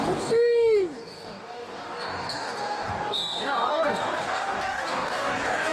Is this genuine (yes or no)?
no